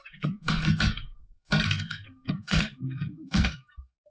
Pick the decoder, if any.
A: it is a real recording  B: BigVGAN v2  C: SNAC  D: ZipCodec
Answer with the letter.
C